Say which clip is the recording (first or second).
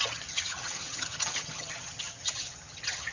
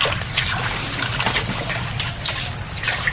second